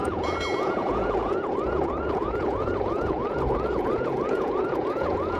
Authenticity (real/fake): fake